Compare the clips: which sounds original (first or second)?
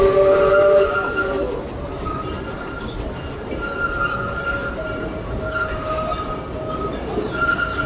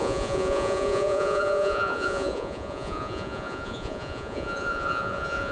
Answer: first